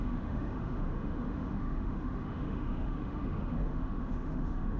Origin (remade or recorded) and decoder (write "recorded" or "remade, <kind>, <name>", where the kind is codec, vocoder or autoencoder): remade, autoencoder, DAC-VAE